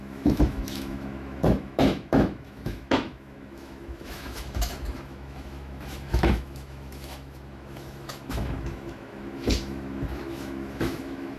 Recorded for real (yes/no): no